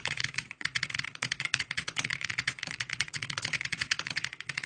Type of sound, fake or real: fake